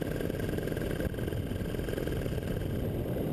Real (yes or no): yes